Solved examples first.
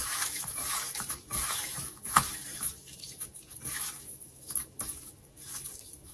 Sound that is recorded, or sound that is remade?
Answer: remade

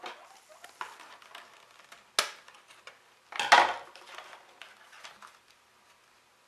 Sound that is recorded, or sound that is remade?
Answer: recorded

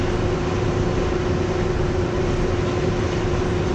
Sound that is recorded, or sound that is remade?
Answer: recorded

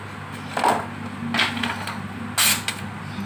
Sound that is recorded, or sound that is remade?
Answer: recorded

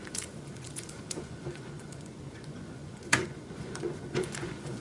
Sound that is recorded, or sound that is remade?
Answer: remade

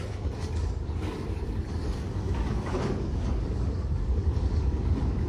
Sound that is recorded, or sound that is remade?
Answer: remade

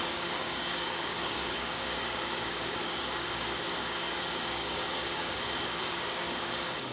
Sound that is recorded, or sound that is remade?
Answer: remade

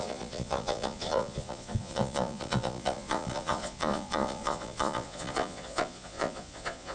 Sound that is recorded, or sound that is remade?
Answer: remade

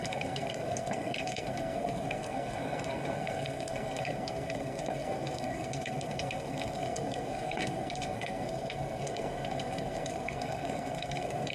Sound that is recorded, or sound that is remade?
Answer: remade